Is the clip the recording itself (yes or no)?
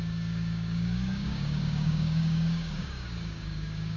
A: no